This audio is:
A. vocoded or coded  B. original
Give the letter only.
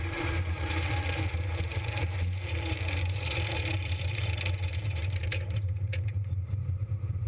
A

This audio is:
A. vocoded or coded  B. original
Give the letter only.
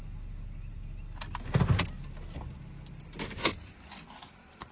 B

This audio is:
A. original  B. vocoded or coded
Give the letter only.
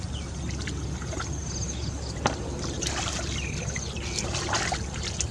A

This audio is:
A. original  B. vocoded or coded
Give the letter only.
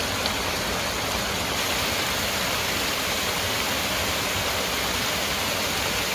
A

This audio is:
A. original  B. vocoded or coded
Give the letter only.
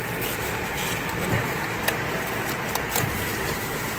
A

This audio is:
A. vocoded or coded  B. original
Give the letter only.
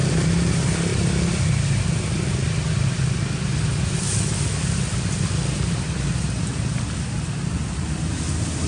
B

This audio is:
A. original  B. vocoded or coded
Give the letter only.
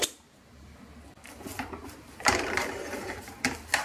B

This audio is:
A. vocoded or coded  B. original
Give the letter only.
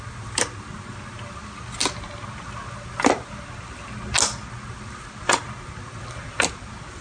B